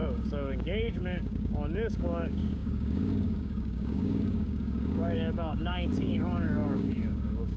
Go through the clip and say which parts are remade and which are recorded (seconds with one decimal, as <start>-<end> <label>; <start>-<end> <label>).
0.0-7.6 remade